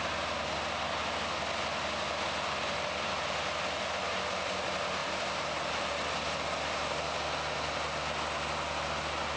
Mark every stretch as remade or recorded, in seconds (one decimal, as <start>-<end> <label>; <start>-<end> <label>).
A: 0.0-9.4 recorded